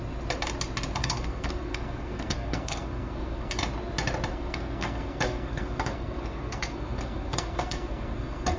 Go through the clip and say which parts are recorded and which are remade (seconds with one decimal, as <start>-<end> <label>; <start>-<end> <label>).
0.0-1.0 recorded; 1.0-3.5 remade; 3.5-4.3 recorded; 4.3-8.6 remade